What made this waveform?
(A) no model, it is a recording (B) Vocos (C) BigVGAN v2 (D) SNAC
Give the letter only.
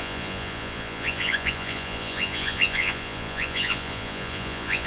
B